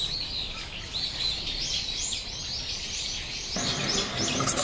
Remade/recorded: recorded